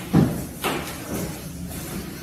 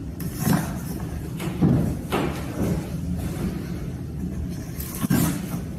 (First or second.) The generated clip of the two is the second